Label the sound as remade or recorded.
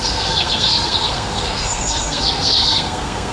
remade